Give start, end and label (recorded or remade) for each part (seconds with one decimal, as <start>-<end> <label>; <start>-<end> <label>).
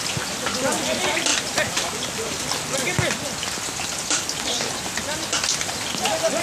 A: 0.0-6.4 recorded